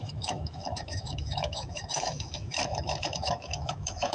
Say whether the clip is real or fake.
fake